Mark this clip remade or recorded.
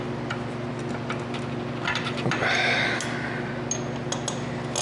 recorded